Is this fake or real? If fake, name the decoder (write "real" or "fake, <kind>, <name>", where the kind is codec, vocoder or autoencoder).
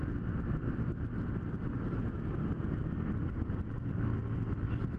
real